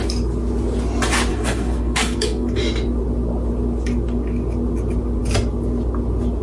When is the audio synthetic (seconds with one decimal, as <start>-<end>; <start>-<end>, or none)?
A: 1.3-2.6